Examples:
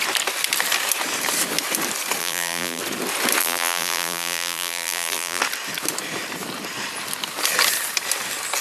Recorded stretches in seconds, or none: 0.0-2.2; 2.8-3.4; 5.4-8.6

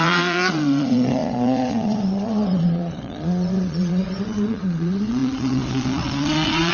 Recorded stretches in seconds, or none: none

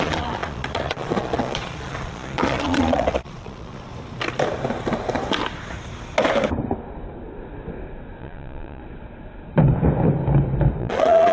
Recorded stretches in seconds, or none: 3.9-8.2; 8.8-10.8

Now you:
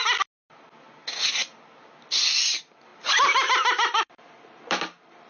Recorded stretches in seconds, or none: 0.0-2.9

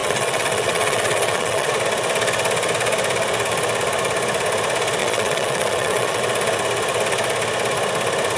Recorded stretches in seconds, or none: 1.7-5.0; 6.2-8.4

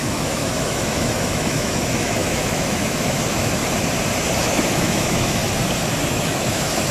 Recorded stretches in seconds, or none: 3.6-4.4; 5.4-6.1